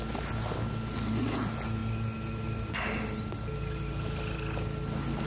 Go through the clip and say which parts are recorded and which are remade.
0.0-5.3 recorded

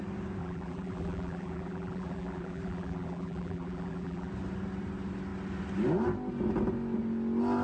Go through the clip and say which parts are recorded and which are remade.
0.0-0.4 recorded; 0.4-4.3 remade; 4.3-7.6 recorded

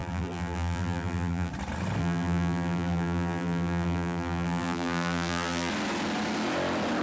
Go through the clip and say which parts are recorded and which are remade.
0.0-1.5 remade; 1.5-2.0 recorded; 2.0-5.7 remade; 5.7-7.0 recorded

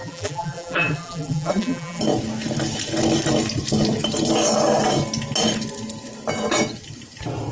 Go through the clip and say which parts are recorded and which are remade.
0.0-2.0 remade; 2.0-7.5 recorded